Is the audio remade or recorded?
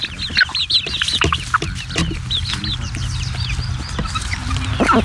recorded